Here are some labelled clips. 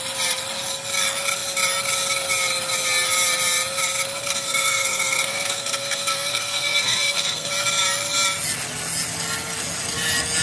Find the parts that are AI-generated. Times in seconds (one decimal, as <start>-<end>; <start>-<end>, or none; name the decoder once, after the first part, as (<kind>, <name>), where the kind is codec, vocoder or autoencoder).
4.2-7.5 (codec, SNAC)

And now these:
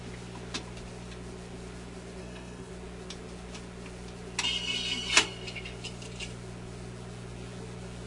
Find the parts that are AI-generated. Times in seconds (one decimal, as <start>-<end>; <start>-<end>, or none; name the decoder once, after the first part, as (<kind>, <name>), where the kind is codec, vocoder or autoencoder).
2.2-2.7 (codec, SNAC)

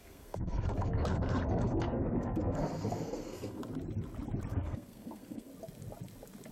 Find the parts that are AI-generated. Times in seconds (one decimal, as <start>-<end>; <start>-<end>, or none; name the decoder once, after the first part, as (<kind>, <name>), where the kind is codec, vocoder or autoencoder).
0.0-3.6 (codec, SNAC); 4.5-5.5

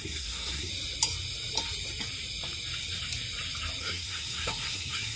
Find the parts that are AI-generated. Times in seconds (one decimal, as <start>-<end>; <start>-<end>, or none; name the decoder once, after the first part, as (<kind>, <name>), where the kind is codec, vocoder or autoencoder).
0.0-0.7 (codec, SNAC); 3.8-5.2

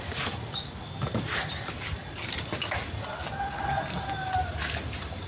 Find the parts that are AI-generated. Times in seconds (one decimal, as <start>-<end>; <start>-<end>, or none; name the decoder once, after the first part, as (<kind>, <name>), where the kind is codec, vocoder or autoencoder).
none